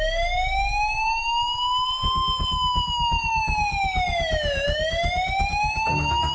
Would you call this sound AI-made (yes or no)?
yes